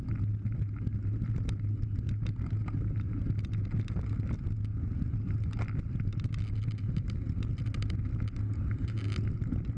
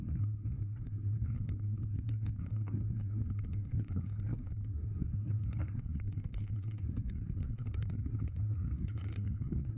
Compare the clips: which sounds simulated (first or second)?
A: second